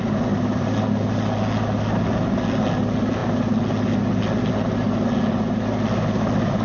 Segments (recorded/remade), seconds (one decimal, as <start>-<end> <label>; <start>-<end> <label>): 0.0-6.6 recorded